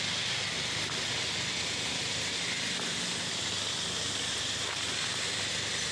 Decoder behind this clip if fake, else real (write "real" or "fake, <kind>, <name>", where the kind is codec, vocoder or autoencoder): real